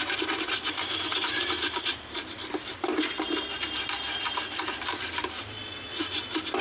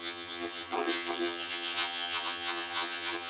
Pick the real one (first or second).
first